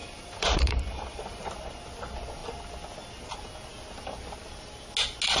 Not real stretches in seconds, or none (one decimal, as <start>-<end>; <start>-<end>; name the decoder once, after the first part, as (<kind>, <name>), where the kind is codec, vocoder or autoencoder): 0.0-1.5 (vocoder, BigVGAN v2)